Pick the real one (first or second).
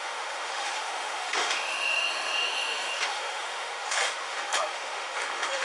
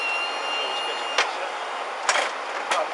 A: second